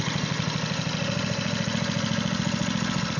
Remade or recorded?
recorded